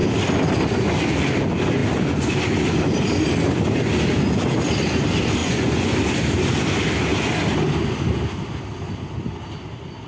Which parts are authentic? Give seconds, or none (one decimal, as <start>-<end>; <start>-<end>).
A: 0.0-5.4; 5.9-10.1